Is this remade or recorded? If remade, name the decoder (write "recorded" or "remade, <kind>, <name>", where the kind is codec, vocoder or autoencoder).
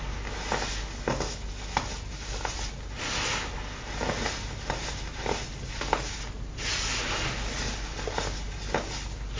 recorded